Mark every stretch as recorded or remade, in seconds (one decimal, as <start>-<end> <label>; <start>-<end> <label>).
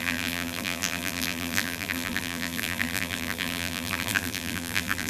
0.0-5.1 remade